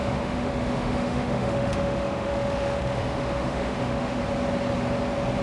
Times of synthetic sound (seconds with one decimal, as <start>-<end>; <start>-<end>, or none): 0.0-4.2